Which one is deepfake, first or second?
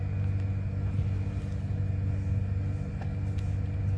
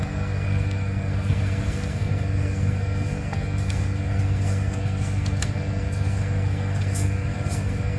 second